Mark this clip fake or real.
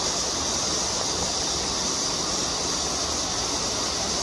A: fake